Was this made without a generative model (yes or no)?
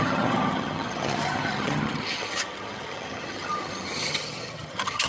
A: no